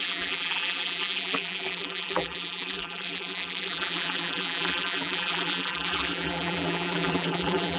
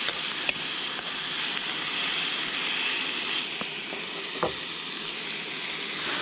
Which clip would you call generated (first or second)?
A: first